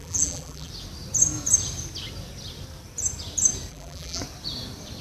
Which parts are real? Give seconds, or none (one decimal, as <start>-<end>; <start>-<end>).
0.7-3.7; 4.2-5.0